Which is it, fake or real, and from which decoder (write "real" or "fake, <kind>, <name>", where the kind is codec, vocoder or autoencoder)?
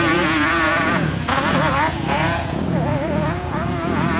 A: fake, vocoder, Vocos